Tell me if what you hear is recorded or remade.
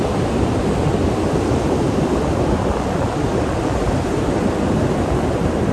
remade